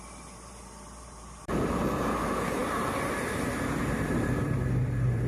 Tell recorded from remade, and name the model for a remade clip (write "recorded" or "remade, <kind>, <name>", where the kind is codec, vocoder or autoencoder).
remade, vocoder, BigVGAN v2